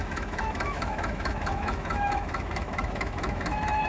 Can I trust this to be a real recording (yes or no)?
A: no